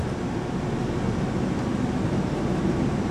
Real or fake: real